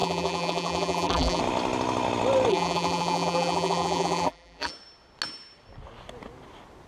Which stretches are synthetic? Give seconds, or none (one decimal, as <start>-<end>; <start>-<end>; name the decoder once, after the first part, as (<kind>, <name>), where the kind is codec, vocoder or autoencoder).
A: 0.0-1.4 (vocoder, BigVGAN v2); 2.5-4.7